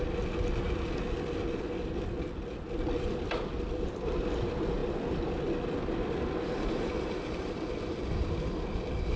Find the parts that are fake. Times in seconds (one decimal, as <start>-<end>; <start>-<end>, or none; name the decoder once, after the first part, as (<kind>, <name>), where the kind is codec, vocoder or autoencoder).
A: none

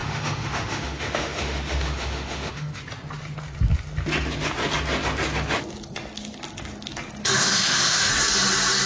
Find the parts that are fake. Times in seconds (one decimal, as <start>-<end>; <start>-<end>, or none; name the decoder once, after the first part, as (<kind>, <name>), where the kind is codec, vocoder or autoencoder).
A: 0.0-2.8 (autoencoder, DAC-VAE); 7.2-8.1

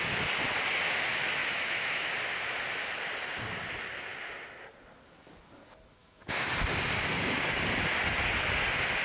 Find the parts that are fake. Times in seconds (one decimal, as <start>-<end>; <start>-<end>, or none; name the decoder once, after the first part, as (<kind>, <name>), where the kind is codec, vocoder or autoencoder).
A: 1.4-2.1 (autoencoder, DAC-VAE); 6.0-6.5

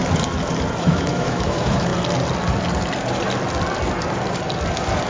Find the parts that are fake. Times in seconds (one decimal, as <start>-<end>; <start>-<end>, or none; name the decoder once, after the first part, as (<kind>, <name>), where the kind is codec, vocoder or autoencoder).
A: 0.8-1.9 (autoencoder, DAC-VAE)